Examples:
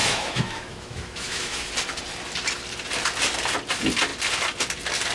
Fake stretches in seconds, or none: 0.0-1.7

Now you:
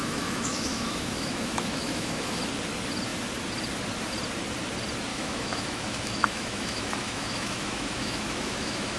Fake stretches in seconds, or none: 0.0-2.4; 5.1-9.0

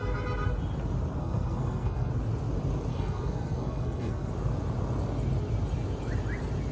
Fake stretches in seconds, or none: 1.2-2.1; 2.9-4.3

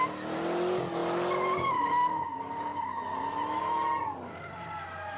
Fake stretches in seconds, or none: none